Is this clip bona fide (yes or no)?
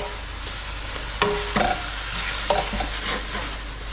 yes